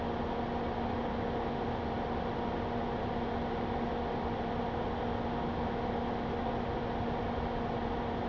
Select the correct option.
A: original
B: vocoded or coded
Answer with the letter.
A